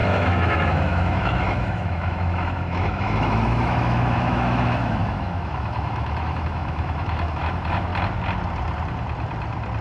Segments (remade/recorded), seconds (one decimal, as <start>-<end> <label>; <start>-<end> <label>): 0.0-7.9 remade; 7.9-9.8 recorded